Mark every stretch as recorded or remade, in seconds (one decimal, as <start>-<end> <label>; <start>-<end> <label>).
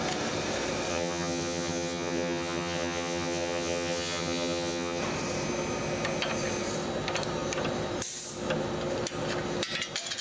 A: 0.0-0.9 recorded; 0.9-5.0 remade; 5.0-10.2 recorded